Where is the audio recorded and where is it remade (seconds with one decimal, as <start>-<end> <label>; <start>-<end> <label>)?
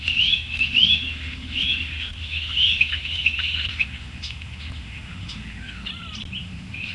0.0-5.9 remade; 5.9-6.4 recorded; 6.4-6.9 remade